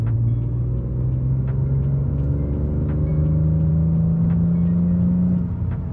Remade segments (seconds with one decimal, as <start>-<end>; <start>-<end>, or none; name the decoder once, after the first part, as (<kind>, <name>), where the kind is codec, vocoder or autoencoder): none